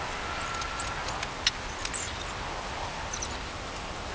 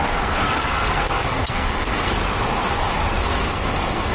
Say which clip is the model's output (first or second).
second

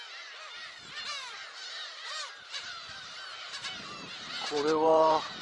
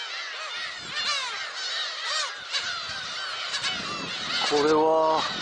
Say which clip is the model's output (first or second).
first